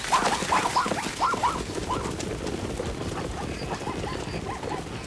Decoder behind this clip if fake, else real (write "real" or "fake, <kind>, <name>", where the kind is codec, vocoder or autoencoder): real